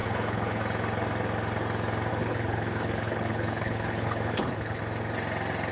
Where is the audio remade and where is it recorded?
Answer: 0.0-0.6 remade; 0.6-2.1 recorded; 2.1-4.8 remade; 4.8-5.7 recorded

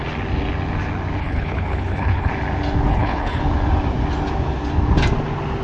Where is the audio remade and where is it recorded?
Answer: 0.0-1.2 recorded; 1.2-2.3 remade; 2.3-2.9 recorded; 2.9-3.4 remade; 3.4-5.6 recorded

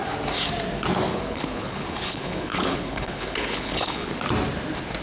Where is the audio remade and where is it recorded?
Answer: 0.0-1.1 recorded; 1.1-4.1 remade; 4.1-5.0 recorded

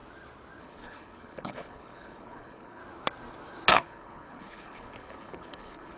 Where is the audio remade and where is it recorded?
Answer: 0.0-0.6 recorded; 0.6-2.8 remade; 2.8-3.7 recorded; 3.7-6.0 remade

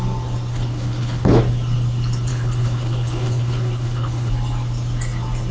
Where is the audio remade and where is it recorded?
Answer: 0.0-0.5 recorded; 0.5-1.4 remade; 1.4-2.3 recorded; 2.3-4.3 remade; 4.3-5.5 recorded